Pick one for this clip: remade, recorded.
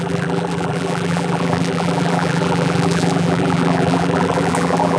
remade